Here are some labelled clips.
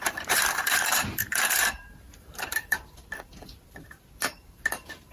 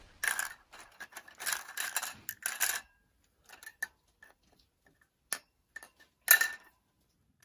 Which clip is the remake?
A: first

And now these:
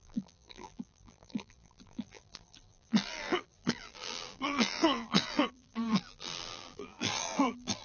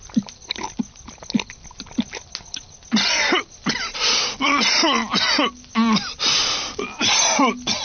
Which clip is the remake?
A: first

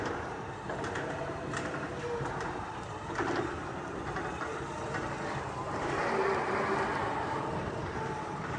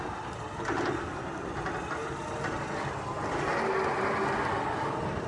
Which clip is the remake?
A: first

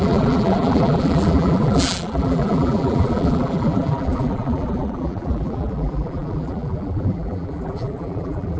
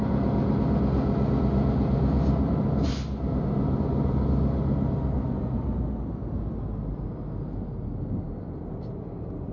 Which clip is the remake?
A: first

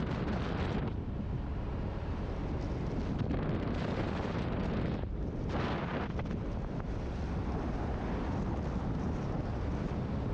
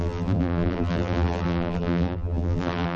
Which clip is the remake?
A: second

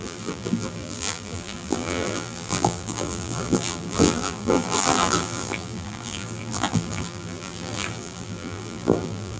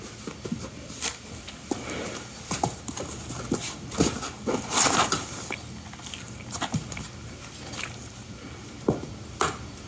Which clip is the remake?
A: first